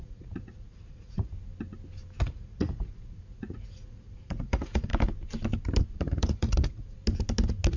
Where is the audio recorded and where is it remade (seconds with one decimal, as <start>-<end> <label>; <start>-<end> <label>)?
0.0-1.3 remade; 1.3-2.2 recorded; 2.2-4.9 remade; 4.9-5.8 recorded; 5.8-7.0 remade; 7.0-7.8 recorded